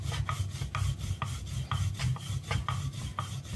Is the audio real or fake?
real